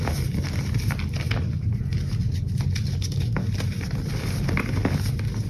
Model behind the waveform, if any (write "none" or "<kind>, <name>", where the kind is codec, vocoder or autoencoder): none